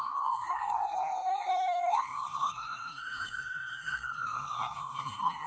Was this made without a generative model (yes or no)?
no